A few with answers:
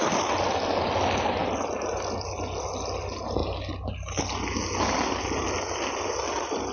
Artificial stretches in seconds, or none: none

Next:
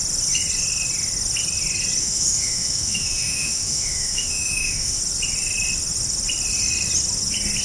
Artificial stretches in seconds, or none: 2.0-5.0 (autoencoder, DAC-VAE)

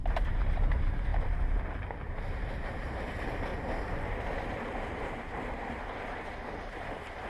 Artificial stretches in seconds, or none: 0.0-1.1 (vocoder, BigVGAN v2); 2.1-3.5; 4.2-7.3

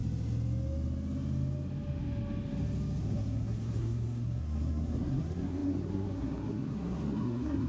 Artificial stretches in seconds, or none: 3.0-7.7 (codec, SNAC)

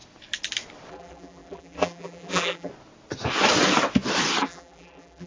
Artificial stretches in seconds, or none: 0.9-2.7 (vocoder, BigVGAN v2); 4.4-5.3

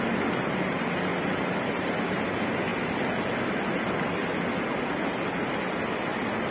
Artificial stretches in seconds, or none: none

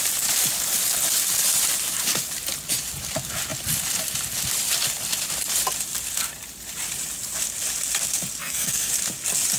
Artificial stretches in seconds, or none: 8.4-8.9 (codec, SNAC)

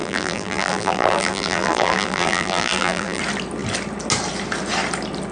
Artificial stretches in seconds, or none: 0.0-3.2 (vocoder, BigVGAN v2)